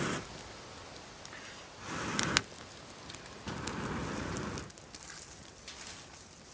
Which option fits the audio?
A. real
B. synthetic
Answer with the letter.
A